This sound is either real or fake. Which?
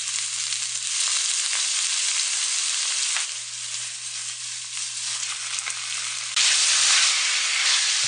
real